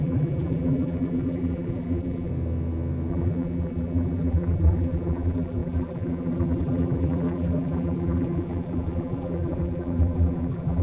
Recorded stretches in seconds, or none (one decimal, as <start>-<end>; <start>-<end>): 2.3-3.1